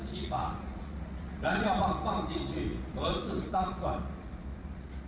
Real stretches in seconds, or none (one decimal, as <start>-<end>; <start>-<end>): none